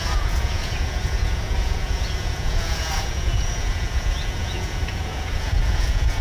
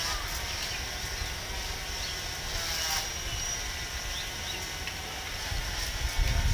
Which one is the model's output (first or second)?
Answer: first